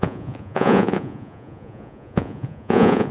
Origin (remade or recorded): remade